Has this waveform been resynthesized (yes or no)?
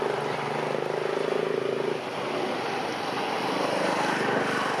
no